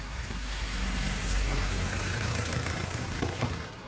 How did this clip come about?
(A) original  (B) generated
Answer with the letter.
B